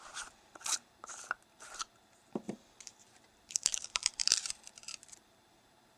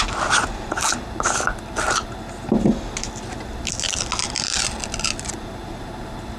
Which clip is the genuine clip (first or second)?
second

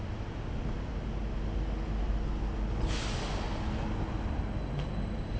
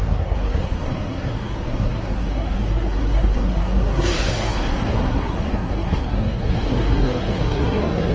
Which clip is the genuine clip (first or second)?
first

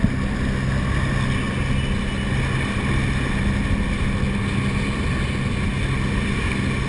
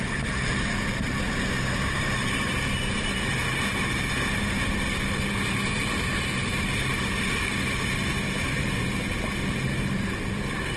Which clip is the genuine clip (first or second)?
first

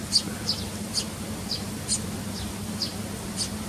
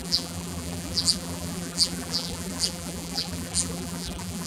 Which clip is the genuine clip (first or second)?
first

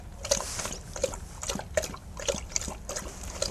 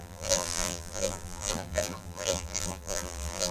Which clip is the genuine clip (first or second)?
first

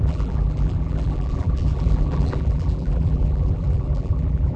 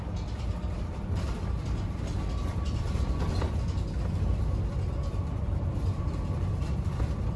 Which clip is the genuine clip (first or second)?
second